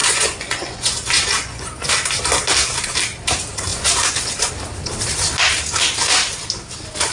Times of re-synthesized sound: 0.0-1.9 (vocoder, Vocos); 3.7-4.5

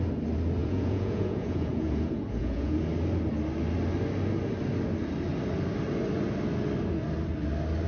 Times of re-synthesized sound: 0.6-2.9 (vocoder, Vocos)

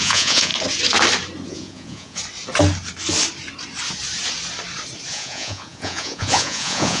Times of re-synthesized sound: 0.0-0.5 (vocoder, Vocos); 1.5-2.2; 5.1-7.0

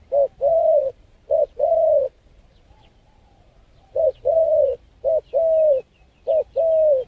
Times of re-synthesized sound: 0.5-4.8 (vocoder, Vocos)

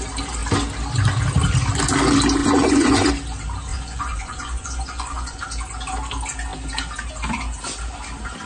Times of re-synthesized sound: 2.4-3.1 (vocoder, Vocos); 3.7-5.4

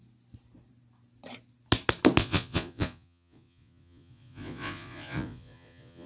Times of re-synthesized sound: 2.2-6.1 (vocoder, Vocos)

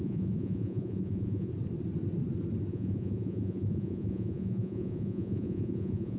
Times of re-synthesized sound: 0.0-1.5 (vocoder, Vocos); 2.7-6.2

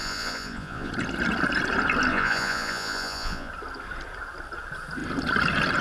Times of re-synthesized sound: 0.0-0.9 (vocoder, Vocos); 2.1-3.5